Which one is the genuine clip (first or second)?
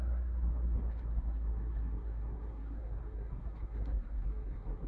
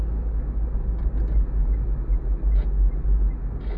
second